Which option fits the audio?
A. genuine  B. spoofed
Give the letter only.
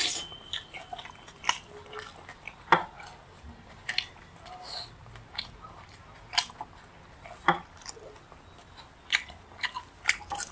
A